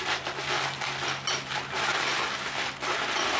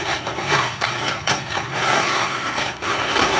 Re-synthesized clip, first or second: second